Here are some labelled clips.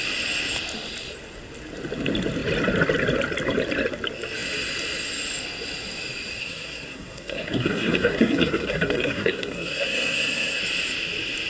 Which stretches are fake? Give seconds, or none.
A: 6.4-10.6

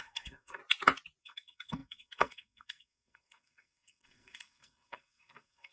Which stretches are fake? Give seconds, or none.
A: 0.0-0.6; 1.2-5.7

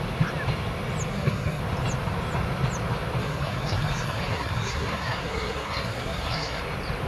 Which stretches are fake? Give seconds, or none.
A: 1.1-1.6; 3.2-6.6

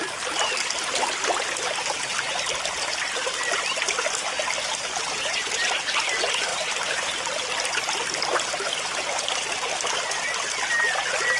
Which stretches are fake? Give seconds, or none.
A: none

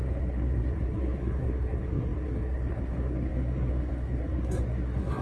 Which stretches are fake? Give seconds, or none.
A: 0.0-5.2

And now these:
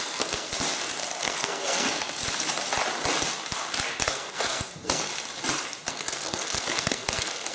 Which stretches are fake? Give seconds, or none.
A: 0.0-0.5; 1.2-2.2; 4.0-5.1; 5.9-7.5